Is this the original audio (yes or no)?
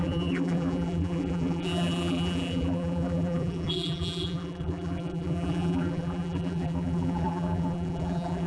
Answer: no